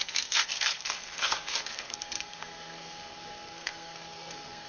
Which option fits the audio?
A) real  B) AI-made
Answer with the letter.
B